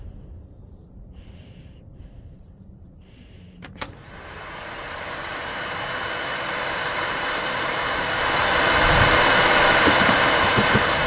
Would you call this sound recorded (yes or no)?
no